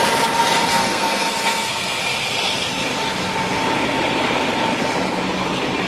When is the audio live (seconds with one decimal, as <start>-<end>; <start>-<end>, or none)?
0.0-0.7; 2.0-5.9

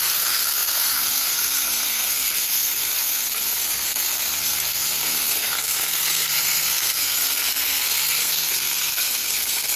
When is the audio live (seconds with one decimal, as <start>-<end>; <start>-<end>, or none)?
none

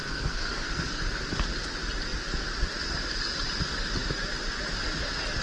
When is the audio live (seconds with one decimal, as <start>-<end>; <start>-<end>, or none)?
1.0-5.4

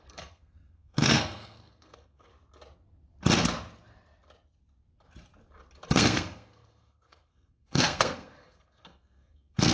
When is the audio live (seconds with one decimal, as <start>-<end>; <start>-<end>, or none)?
2.3-5.9

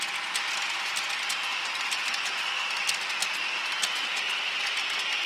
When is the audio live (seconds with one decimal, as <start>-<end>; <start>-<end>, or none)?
0.0-5.3

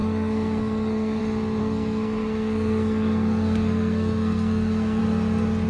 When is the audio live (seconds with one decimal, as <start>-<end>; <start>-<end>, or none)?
1.2-1.6; 5.0-5.7